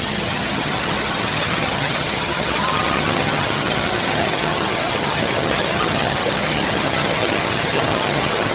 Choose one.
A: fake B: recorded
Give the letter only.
A